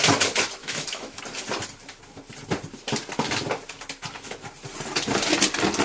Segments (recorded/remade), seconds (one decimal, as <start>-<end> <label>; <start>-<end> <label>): 0.0-0.6 recorded; 0.6-1.2 remade; 1.2-5.8 recorded